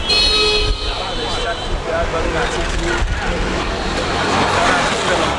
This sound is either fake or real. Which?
real